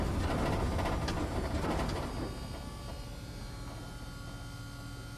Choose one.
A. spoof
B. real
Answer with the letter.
B